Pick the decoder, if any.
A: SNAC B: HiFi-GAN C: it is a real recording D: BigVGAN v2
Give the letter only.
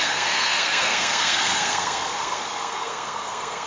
A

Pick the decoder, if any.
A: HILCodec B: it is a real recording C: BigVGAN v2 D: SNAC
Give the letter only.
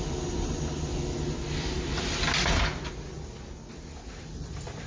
B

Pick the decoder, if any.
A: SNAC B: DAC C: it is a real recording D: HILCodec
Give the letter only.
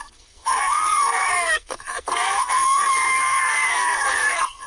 A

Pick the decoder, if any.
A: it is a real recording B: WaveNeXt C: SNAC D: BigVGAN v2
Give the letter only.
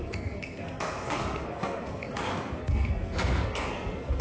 C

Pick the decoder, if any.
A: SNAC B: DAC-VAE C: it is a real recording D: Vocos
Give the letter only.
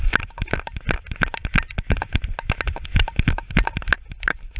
C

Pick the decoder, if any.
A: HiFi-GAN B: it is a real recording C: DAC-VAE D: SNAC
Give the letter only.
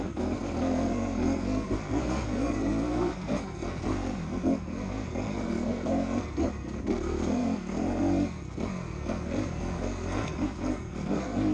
D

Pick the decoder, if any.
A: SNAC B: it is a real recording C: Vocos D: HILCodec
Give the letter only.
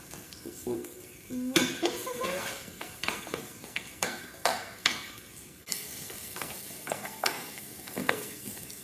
A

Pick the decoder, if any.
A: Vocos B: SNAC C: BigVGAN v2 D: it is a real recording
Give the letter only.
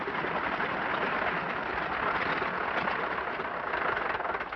D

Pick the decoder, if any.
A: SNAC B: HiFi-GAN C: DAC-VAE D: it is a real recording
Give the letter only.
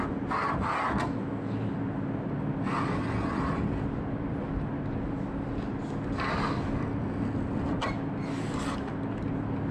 D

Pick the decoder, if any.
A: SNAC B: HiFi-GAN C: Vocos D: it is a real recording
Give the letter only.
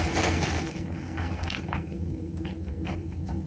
A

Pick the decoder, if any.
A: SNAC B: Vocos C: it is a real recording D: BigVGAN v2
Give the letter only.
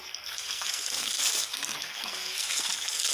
A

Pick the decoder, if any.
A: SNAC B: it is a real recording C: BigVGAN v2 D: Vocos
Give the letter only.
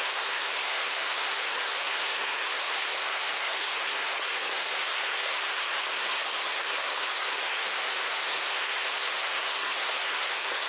A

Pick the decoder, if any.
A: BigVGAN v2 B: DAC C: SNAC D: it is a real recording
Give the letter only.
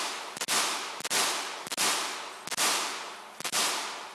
D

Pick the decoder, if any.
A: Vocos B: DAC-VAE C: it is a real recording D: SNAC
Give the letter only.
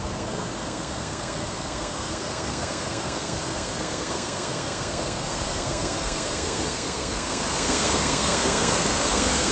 D